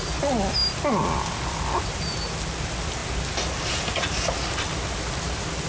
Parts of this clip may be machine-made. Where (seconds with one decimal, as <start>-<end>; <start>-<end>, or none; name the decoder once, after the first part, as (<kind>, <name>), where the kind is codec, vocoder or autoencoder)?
none